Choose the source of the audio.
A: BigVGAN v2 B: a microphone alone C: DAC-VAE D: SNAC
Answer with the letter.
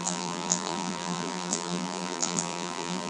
A